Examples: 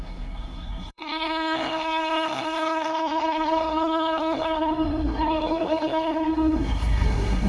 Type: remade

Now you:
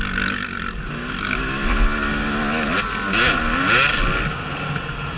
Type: recorded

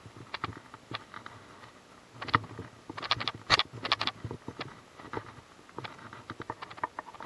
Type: recorded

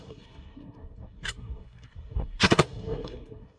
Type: remade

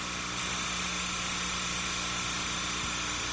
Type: recorded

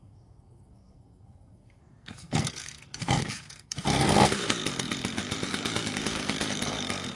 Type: remade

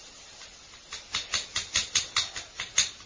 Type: recorded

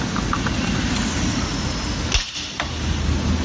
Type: recorded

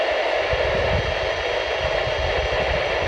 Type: recorded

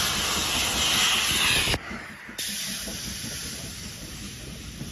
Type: recorded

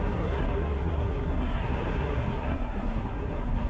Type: remade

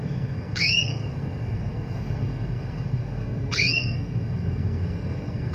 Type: remade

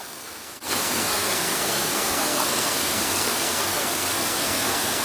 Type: remade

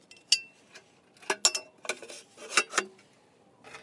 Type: recorded